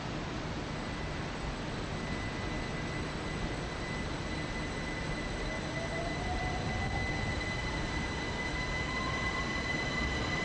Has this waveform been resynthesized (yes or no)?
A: no